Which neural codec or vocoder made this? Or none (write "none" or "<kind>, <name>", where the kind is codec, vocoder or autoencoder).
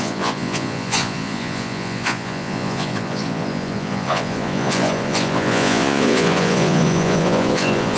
vocoder, Vocos